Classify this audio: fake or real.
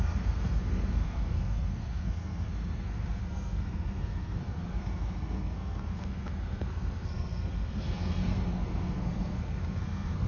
fake